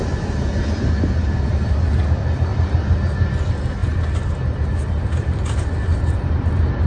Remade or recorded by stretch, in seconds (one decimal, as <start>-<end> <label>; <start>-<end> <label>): 0.0-6.9 recorded